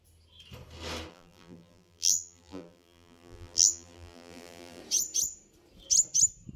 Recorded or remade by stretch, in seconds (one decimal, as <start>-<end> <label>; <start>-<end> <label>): 0.0-1.1 recorded; 1.1-4.8 remade; 4.8-6.6 recorded